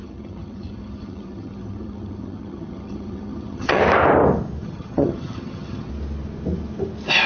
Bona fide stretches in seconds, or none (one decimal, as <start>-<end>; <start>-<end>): 3.8-4.6; 5.9-7.3